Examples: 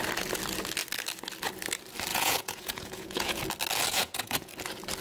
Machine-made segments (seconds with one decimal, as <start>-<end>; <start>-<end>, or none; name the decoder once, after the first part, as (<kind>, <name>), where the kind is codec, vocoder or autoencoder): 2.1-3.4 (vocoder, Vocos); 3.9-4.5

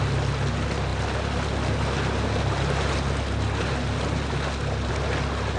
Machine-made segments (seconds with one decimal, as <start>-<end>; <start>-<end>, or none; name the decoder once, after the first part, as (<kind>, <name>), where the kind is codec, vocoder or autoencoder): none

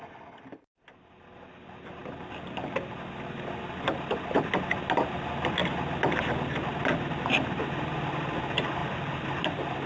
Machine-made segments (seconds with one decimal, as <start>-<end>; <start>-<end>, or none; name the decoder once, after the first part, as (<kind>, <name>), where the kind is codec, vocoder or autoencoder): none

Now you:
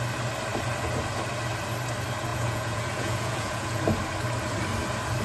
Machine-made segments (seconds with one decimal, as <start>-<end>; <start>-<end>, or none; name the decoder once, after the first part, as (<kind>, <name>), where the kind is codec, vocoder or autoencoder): 2.3-3.8 (vocoder, Vocos)

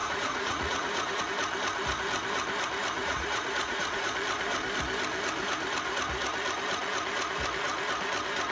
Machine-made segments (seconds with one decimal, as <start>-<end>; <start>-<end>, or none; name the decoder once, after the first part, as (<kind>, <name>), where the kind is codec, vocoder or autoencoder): 0.0-1.2 (vocoder, Vocos); 3.0-4.1